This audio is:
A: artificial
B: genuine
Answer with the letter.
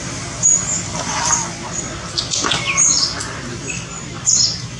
B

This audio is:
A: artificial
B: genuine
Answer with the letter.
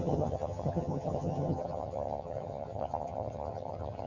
A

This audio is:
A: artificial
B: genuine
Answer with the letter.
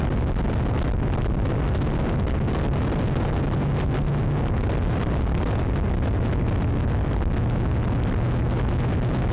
B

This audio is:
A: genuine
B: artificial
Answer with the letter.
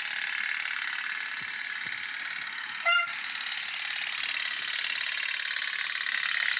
A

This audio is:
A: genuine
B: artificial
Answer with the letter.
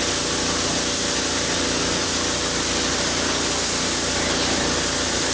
A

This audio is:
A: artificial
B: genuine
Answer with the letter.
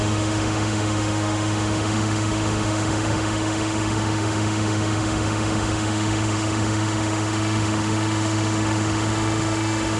A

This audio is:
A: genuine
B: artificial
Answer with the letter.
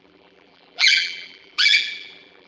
B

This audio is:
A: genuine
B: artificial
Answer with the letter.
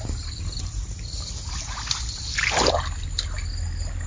A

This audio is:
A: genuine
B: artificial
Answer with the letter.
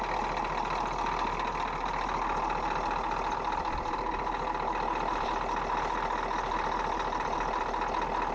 A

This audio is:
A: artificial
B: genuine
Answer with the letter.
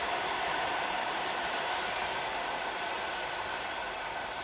B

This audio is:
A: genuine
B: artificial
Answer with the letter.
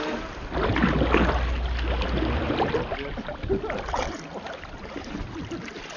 A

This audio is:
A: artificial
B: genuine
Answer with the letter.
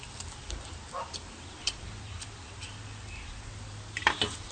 A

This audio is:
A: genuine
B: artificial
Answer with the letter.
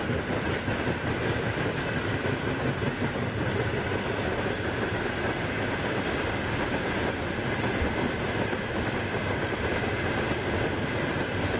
A